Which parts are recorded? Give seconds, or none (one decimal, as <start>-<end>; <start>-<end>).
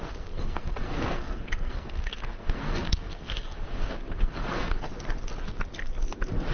4.9-6.5